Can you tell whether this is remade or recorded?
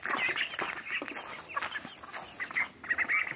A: recorded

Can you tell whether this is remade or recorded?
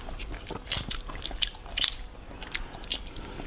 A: recorded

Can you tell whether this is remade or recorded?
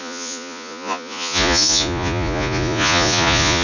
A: remade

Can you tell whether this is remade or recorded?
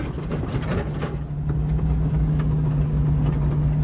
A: recorded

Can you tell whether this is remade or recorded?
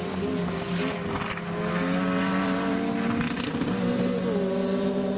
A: recorded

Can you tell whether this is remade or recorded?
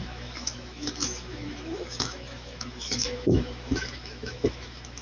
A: remade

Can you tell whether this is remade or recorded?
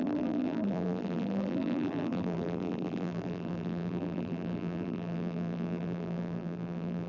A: remade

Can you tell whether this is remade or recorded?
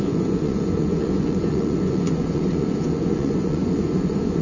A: remade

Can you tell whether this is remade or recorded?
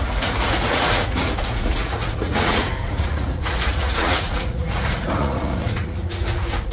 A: remade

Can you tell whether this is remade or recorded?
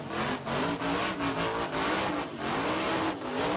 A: recorded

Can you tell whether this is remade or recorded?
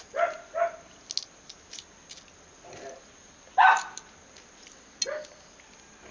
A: recorded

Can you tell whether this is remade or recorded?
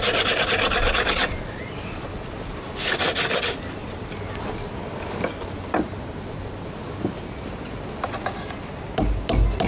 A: recorded